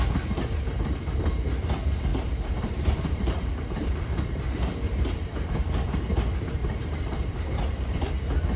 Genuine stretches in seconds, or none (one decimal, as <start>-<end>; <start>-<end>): 0.0-2.1; 5.7-6.6; 8.1-8.6